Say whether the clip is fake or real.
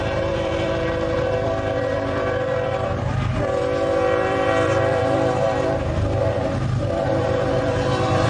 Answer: fake